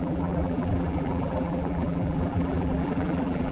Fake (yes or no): yes